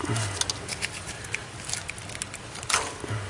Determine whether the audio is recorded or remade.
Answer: recorded